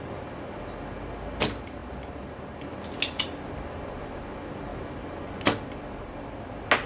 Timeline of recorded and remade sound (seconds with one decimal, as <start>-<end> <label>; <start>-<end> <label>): 0.0-4.7 recorded; 4.7-5.3 remade; 5.3-6.9 recorded